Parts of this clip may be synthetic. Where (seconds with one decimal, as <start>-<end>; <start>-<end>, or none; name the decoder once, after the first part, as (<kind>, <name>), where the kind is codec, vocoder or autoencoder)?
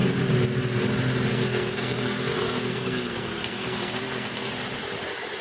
1.3-4.5 (codec, SNAC)